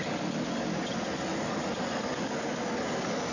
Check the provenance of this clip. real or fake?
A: real